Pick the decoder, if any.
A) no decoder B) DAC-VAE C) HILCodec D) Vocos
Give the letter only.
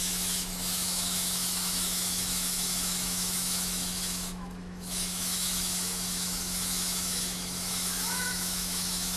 B